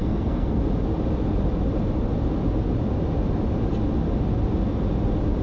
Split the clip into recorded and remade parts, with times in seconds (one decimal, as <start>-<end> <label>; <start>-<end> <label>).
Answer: 0.0-0.6 remade; 0.6-5.4 recorded